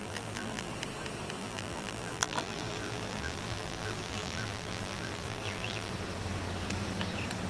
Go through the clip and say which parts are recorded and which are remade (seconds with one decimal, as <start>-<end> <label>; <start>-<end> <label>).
0.0-0.7 remade; 0.7-1.4 recorded; 1.4-5.9 remade; 5.9-7.5 recorded

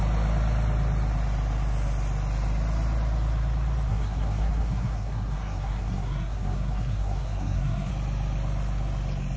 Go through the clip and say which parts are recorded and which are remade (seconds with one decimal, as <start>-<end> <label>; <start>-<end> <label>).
0.0-3.9 recorded; 3.9-7.9 remade; 7.9-9.4 recorded

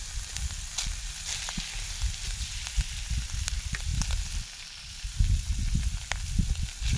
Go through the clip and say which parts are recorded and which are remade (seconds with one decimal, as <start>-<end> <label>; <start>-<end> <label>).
0.0-7.0 recorded

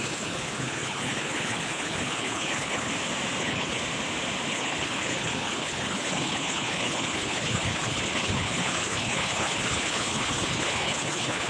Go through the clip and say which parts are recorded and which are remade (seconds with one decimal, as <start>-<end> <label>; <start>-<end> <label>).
0.0-2.9 remade; 2.9-3.4 recorded; 3.4-3.8 remade; 3.8-4.5 recorded; 4.5-11.5 remade